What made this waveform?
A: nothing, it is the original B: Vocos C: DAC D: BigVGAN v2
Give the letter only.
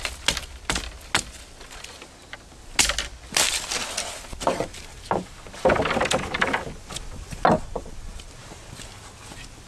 A